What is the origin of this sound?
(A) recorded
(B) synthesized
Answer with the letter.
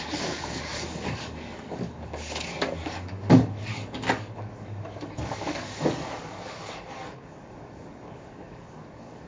B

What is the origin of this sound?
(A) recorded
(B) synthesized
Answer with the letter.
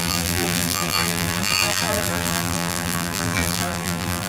B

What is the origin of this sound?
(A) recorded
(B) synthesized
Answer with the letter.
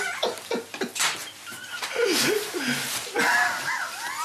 A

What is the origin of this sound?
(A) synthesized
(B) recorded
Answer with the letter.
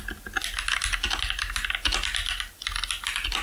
B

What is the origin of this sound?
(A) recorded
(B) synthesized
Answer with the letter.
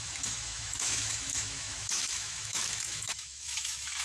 B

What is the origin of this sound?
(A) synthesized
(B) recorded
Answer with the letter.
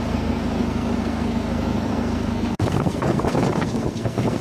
A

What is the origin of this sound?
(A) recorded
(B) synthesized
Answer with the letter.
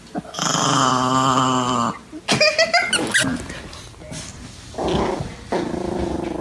A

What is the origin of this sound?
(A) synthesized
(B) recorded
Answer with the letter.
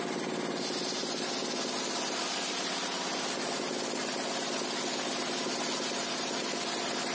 B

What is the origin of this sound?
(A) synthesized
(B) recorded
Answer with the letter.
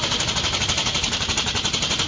B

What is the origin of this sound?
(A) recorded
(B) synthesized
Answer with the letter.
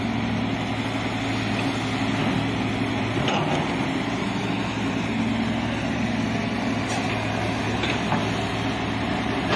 A